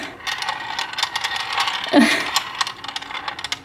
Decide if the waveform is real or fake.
real